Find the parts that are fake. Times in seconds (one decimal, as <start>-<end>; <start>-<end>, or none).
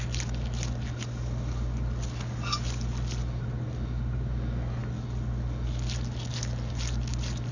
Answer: none